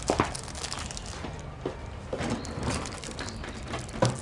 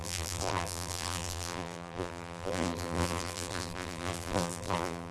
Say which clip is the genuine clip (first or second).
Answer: first